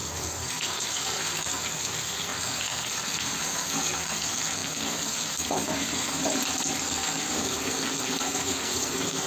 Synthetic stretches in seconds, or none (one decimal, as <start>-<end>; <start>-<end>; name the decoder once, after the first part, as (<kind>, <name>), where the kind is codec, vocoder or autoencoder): 0.0-6.2 (codec, SNAC); 6.8-9.3